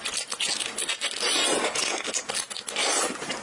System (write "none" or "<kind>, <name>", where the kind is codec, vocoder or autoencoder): none